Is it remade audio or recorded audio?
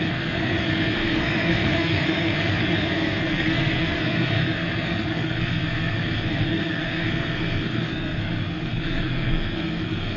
remade